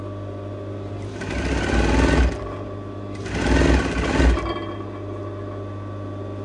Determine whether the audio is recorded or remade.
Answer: recorded